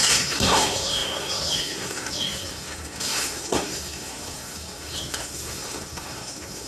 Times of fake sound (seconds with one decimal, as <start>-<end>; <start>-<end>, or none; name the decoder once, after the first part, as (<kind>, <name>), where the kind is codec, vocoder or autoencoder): 0.0-6.7 (codec, SNAC)